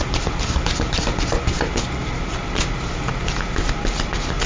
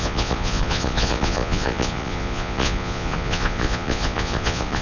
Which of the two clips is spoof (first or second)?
second